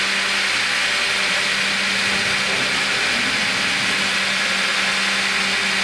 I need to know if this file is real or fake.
real